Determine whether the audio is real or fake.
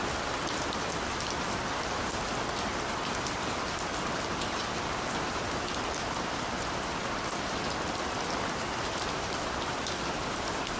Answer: real